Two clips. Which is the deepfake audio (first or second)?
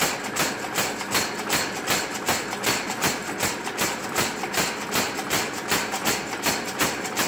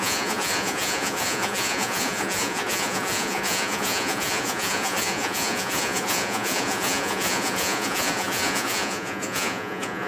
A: second